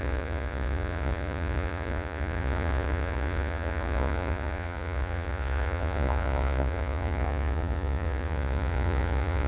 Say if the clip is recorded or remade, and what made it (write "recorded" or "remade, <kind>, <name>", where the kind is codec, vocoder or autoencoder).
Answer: remade, vocoder, Vocos